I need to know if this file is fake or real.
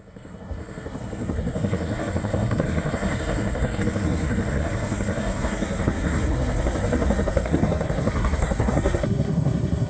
fake